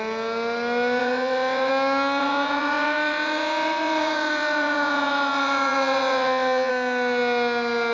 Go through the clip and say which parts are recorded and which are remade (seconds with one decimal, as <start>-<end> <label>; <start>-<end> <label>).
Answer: 0.0-1.0 recorded; 1.0-1.7 remade; 1.7-2.2 recorded; 2.2-6.7 remade; 6.7-7.9 recorded